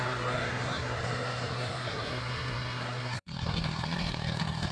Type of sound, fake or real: fake